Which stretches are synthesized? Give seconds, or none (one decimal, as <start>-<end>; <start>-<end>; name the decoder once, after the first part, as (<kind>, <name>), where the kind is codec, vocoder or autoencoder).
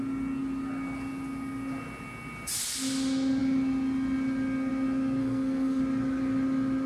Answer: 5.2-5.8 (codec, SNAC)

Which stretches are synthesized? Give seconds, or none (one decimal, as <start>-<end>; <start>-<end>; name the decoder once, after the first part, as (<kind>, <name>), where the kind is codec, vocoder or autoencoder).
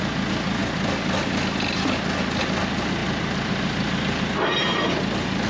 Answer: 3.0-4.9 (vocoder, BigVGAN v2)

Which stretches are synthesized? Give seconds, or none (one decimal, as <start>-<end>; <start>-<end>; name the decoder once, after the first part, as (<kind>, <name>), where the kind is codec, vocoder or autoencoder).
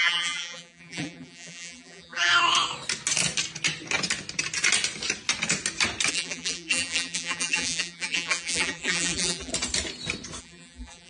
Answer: 0.0-2.3 (vocoder, BigVGAN v2); 6.1-9.5; 10.4-11.1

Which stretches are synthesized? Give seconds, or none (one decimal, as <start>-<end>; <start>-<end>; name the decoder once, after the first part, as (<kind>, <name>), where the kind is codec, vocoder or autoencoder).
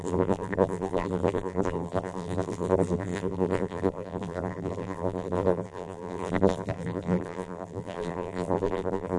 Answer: 0.0-9.2 (vocoder, BigVGAN v2)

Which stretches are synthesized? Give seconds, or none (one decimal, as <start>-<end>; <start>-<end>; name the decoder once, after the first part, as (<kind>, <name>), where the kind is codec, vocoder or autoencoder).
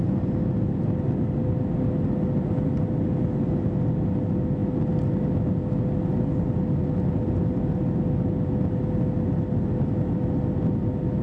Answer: none